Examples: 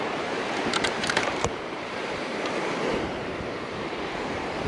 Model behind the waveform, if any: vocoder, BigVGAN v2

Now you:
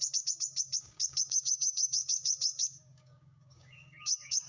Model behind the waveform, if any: codec, DAC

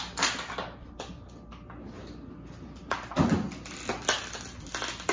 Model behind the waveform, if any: none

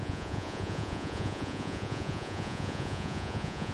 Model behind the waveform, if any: vocoder, Vocos